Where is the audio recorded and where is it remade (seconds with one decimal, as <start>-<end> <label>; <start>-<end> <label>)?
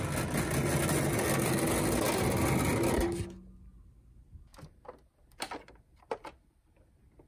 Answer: 0.0-7.3 recorded